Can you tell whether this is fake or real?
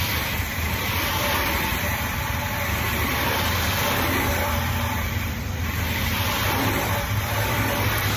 fake